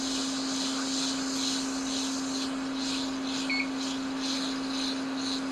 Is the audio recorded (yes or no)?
yes